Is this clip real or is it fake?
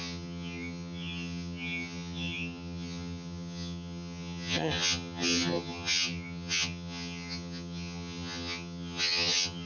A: fake